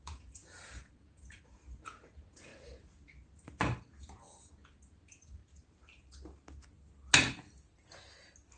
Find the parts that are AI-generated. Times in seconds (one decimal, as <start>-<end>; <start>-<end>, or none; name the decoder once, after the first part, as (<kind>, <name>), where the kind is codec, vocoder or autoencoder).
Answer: 0.0-2.5 (vocoder, Vocos); 4.0-5.4